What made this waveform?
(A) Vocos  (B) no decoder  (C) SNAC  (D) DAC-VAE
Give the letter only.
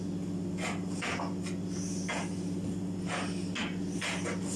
B